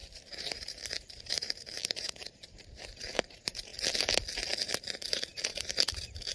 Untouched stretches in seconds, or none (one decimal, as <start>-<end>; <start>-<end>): 3.7-4.8